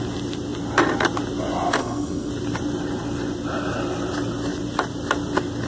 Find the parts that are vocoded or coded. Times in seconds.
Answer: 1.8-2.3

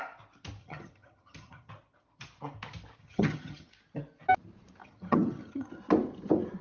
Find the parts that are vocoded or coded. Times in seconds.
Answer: 0.6-1.7; 3.0-3.7; 4.8-5.8